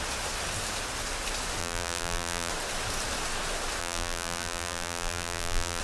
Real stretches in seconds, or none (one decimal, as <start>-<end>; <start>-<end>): 0.0-1.6; 2.5-3.8